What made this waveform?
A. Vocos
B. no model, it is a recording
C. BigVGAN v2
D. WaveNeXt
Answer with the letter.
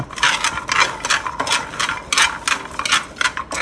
B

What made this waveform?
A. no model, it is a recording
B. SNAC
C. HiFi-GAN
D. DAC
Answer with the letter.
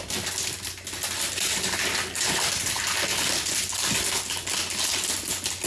A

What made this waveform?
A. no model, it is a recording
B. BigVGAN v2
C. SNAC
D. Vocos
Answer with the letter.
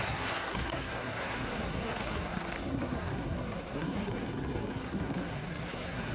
C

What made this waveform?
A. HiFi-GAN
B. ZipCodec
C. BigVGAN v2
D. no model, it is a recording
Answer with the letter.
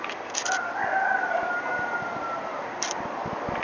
C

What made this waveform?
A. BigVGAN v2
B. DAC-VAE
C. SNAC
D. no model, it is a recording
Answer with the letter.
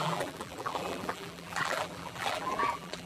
A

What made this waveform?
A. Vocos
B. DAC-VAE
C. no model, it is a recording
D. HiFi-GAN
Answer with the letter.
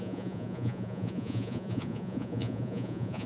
A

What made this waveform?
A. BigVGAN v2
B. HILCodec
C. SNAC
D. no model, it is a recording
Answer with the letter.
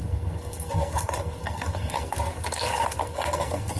C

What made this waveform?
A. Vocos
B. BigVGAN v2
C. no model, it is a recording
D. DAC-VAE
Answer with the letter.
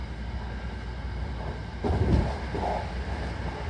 C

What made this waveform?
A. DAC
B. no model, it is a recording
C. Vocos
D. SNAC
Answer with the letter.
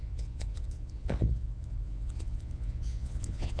C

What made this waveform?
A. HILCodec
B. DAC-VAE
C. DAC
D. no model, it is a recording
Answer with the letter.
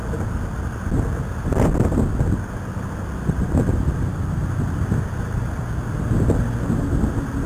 D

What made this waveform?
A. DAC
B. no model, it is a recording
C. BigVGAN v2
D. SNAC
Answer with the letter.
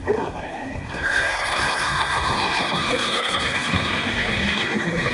D